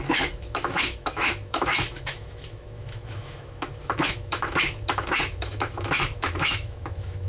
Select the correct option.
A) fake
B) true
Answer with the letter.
A